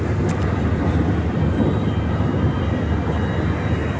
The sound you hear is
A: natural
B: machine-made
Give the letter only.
A